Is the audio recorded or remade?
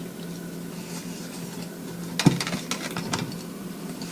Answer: recorded